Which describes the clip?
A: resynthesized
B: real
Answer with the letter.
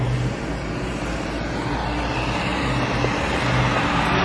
B